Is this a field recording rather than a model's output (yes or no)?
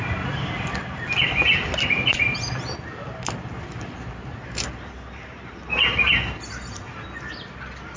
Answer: yes